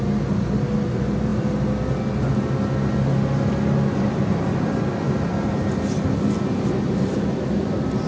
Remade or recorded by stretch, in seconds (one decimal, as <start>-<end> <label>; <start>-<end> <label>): 0.0-8.1 recorded